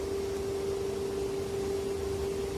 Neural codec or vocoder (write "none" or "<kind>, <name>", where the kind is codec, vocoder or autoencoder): none